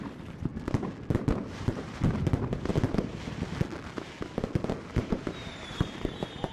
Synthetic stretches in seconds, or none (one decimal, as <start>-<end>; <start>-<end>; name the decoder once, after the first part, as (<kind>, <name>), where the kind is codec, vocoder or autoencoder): 0.0-0.5 (vocoder, BigVGAN v2); 1.5-2.7; 4.8-6.5